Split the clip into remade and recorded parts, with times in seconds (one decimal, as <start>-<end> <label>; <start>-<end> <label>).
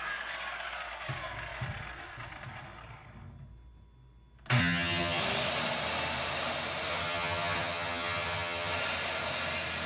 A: 0.0-4.6 recorded; 4.6-5.2 remade; 5.2-6.9 recorded; 6.9-8.8 remade; 8.8-9.9 recorded